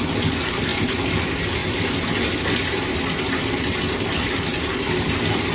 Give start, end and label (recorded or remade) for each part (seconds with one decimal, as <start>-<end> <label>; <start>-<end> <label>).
0.0-0.7 recorded; 0.7-1.2 remade; 1.2-5.5 recorded